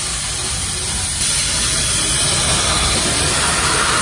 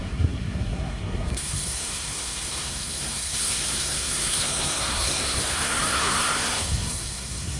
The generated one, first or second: second